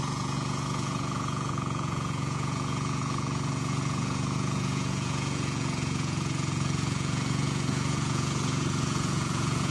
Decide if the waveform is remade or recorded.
remade